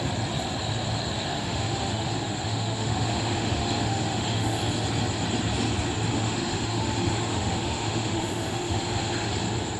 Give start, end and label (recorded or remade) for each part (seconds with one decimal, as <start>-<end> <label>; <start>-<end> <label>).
0.0-1.3 recorded; 1.3-4.6 remade; 4.6-6.1 recorded; 6.1-9.3 remade; 9.3-9.8 recorded